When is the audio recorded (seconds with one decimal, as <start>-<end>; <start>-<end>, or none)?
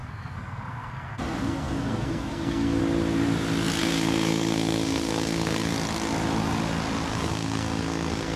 2.8-3.8; 5.7-7.1